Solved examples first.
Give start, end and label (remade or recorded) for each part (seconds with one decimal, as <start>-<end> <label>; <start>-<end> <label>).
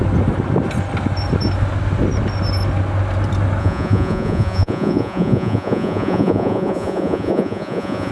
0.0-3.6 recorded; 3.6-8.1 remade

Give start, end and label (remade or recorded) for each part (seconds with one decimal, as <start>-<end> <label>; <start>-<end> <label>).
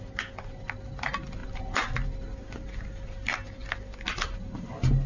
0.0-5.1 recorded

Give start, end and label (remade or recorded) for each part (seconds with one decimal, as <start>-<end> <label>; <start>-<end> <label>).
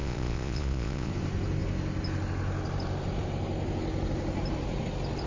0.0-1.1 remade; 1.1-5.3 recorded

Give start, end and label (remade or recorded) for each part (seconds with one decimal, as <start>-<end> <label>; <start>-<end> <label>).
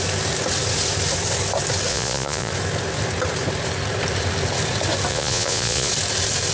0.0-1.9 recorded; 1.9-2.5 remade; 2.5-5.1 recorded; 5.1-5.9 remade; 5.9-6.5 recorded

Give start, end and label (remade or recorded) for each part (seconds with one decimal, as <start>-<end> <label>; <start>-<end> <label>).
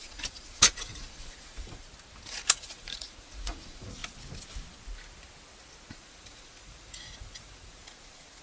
0.0-1.8 remade; 1.8-2.3 recorded; 2.3-4.0 remade; 4.0-5.9 recorded; 5.9-8.4 remade